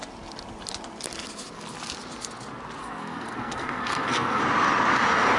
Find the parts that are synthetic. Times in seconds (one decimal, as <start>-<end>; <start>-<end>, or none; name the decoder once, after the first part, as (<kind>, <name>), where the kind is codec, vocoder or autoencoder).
2.8-4.4 (codec, SNAC)